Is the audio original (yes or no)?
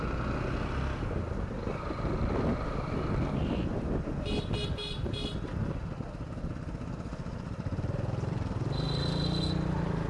yes